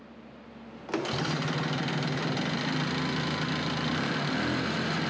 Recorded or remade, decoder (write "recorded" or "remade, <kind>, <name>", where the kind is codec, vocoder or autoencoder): recorded